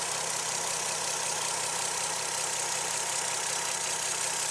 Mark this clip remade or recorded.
recorded